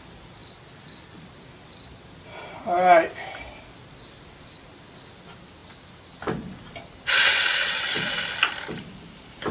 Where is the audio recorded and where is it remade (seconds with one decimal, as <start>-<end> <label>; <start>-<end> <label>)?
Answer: 0.0-7.2 recorded; 7.2-8.2 remade; 8.2-9.5 recorded